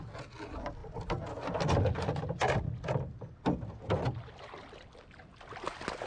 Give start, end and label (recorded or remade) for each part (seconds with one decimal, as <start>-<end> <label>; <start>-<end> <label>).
0.0-6.1 recorded